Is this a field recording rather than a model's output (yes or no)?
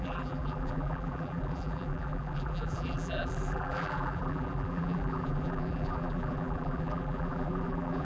no